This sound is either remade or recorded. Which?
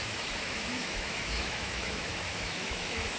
remade